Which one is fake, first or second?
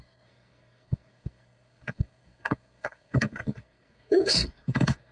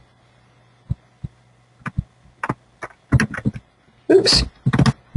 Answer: first